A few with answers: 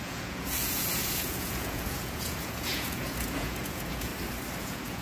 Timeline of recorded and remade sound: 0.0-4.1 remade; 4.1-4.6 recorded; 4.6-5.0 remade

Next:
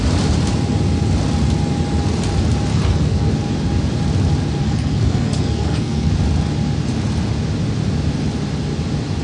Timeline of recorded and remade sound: 0.0-2.7 recorded; 2.7-3.3 remade; 3.3-4.6 recorded; 4.6-6.1 remade; 6.1-9.2 recorded

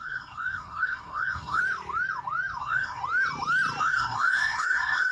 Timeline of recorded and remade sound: 0.0-1.6 remade; 1.6-2.6 recorded; 2.6-3.0 remade; 3.0-3.8 recorded; 3.8-5.1 remade